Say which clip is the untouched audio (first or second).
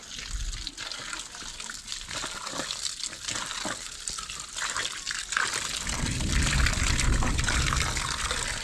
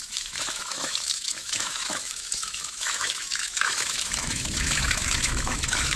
first